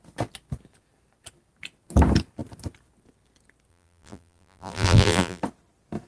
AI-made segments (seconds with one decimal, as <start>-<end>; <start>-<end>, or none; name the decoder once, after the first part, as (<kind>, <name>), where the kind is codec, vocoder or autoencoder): 3.7-5.4 (vocoder, BigVGAN v2)